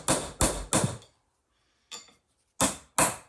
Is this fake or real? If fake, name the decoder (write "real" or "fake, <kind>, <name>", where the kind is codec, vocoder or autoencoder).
real